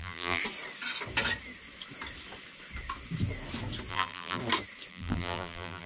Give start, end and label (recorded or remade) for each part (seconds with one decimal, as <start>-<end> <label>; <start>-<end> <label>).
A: 0.0-0.4 remade; 0.4-3.9 recorded; 3.9-4.4 remade; 4.4-4.9 recorded; 4.9-5.9 remade